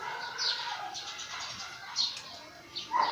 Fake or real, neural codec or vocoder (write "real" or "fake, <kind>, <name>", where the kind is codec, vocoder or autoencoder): real